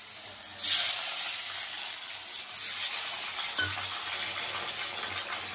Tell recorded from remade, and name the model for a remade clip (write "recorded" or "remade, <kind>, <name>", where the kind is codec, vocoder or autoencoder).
recorded